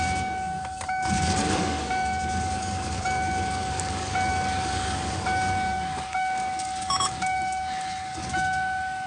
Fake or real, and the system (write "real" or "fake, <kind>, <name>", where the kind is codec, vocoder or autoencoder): fake, codec, DAC